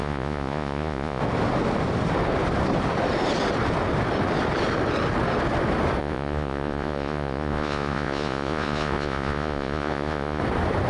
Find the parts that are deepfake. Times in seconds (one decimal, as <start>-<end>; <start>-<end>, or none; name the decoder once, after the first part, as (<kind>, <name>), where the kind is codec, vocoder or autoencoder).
0.0-1.2 (vocoder, Vocos); 6.0-10.4